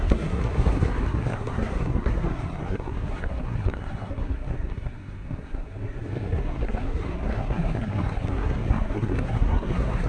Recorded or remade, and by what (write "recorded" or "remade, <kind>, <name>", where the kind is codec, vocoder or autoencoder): remade, codec, SNAC